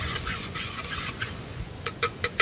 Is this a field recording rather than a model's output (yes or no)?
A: no